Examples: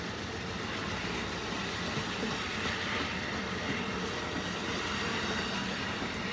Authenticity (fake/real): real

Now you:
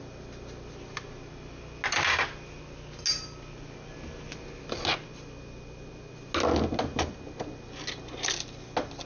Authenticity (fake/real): real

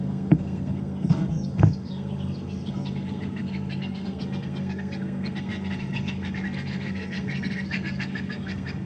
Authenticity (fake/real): fake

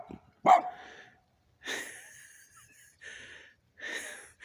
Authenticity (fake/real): real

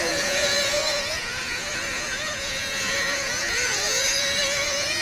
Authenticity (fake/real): fake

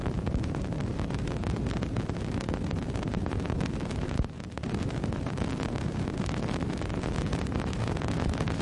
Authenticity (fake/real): fake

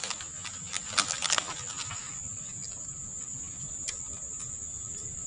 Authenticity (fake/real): real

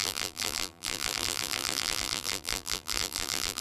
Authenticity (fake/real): fake